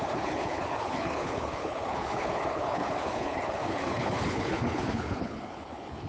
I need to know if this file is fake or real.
fake